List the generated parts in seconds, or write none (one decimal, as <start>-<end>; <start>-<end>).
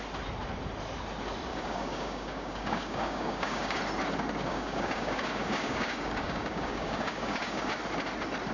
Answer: 1.5-3.8; 4.5-7.7